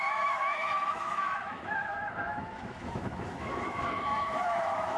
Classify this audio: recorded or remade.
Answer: remade